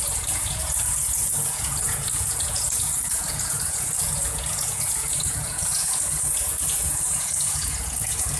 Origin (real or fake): fake